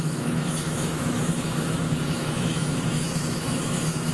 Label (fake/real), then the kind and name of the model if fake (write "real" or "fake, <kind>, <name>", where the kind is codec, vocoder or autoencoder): fake, autoencoder, DAC-VAE